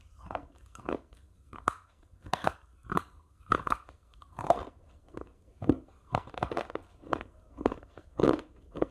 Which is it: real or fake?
fake